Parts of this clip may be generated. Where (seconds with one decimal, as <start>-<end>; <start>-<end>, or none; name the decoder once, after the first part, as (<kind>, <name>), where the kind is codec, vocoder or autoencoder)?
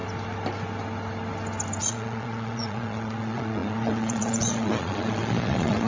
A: 1.8-5.9 (vocoder, Vocos)